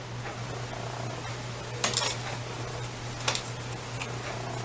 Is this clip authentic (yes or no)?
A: yes